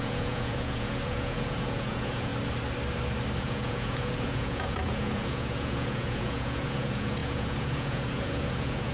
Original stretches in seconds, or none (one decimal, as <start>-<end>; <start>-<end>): 2.3-3.4